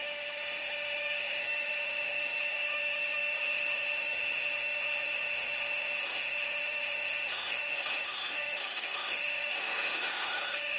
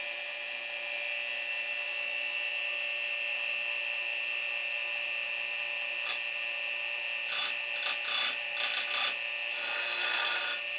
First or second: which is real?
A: second